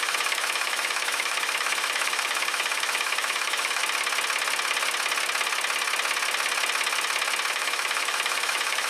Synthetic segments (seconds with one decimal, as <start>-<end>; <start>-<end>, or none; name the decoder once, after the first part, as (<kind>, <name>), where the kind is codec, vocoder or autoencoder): 0.0-3.8 (autoencoder, DAC-VAE); 7.5-8.9